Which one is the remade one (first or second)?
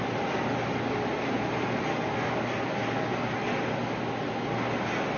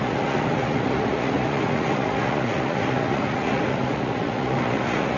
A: second